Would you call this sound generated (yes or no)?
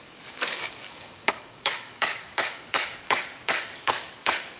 yes